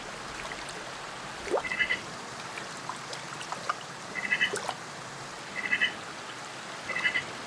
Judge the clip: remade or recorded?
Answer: recorded